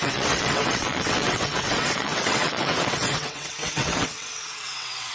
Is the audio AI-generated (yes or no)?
yes